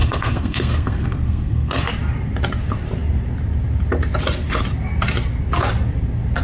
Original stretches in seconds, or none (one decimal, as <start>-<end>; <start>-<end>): 1.8-6.4